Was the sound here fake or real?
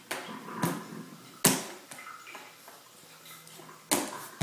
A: real